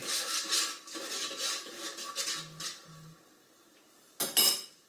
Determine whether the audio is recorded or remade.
recorded